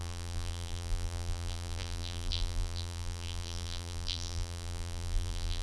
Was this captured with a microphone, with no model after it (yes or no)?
no